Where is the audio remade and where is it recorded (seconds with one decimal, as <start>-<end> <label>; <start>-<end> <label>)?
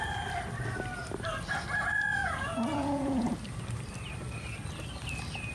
0.0-2.2 recorded; 2.2-3.3 remade; 3.3-5.5 recorded